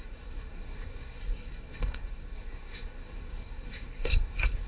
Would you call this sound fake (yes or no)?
yes